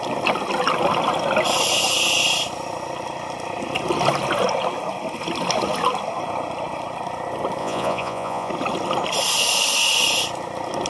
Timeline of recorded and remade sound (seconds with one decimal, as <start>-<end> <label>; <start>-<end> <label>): 0.0-7.6 recorded; 7.6-8.5 remade; 8.5-10.9 recorded